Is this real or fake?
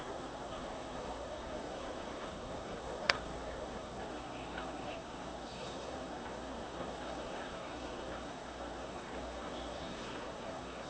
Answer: fake